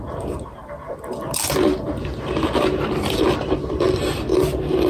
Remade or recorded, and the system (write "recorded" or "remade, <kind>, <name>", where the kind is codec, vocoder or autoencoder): recorded